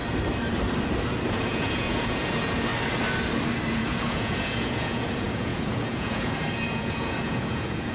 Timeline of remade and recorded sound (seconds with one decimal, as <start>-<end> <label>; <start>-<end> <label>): 0.0-1.3 recorded; 1.3-2.7 remade; 2.7-3.7 recorded; 3.7-7.9 remade